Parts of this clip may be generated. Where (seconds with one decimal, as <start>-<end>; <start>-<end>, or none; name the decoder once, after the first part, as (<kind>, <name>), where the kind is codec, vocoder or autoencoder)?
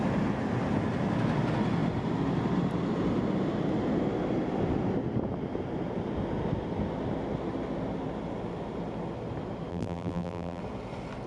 9.7-10.6 (vocoder, BigVGAN v2)